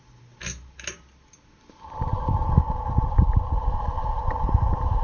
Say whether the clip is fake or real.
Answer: real